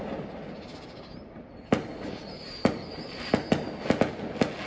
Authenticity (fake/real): real